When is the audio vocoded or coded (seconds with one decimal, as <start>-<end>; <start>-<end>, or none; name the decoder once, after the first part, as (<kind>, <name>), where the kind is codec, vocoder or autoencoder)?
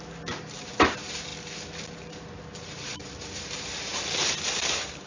0.0-1.3 (vocoder, BigVGAN v2); 2.1-3.9; 4.5-5.1